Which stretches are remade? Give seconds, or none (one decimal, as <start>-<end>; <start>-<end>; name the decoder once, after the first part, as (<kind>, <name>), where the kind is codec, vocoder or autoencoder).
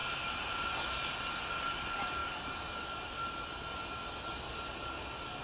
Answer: none